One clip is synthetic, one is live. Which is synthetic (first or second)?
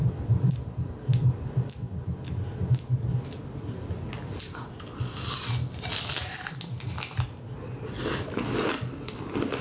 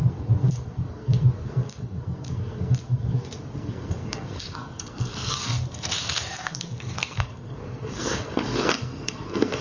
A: second